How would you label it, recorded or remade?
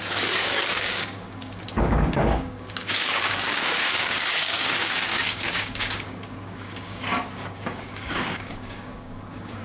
remade